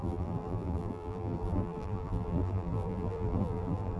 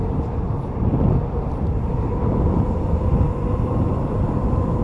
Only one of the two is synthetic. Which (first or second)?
first